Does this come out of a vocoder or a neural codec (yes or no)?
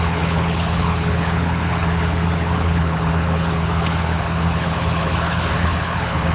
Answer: yes